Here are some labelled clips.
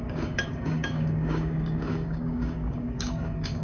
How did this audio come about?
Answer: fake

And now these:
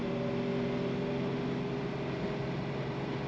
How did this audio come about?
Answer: real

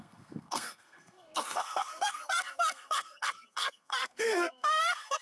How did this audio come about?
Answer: fake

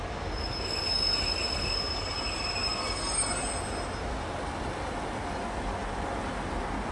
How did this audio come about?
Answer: real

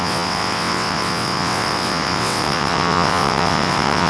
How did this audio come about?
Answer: fake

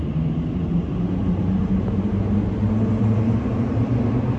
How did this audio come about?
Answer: real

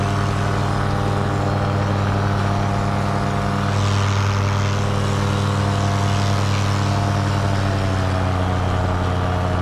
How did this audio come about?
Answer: real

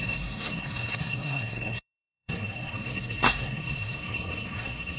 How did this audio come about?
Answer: fake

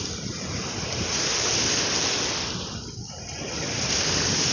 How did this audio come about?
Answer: real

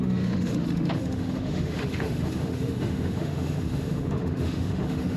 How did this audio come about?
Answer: fake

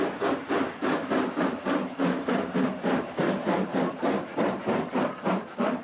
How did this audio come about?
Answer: fake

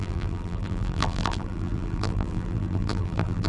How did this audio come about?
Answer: fake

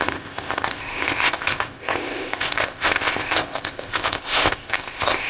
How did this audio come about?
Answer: fake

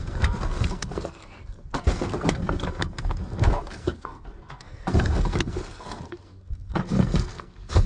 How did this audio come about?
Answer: fake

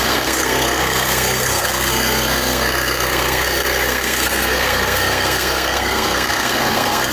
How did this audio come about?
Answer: fake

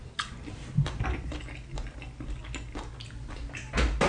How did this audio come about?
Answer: real